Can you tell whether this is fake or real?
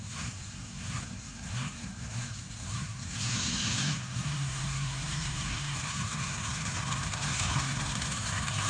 fake